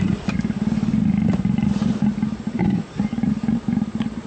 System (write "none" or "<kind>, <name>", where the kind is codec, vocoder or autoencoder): vocoder, BigVGAN v2